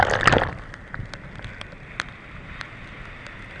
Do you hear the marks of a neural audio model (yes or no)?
no